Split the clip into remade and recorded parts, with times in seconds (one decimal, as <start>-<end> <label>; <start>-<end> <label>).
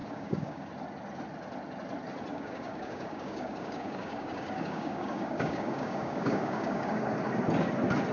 0.0-0.7 remade; 0.7-2.3 recorded; 2.3-7.0 remade; 7.0-8.1 recorded